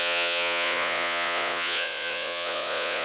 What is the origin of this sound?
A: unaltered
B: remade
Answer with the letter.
B